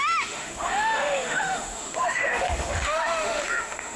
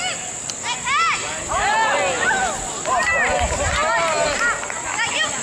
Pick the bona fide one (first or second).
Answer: second